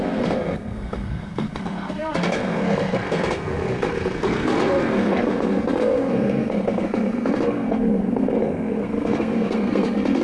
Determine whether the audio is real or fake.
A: fake